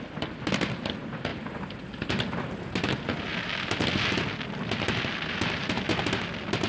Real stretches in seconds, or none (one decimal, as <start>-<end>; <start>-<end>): 0.0-6.7